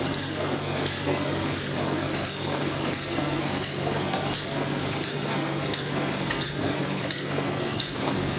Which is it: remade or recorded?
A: remade